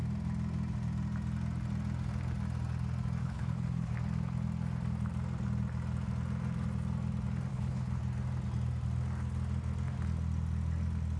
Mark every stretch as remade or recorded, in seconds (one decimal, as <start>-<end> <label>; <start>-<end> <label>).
0.0-3.2 recorded; 3.2-3.9 remade; 3.9-7.5 recorded; 7.5-8.0 remade; 8.0-11.2 recorded